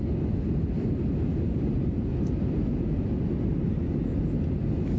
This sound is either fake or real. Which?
real